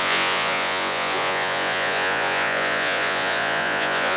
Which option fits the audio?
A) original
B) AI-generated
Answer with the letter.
B